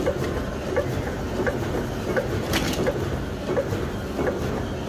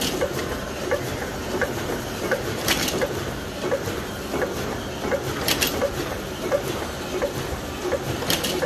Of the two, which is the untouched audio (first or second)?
first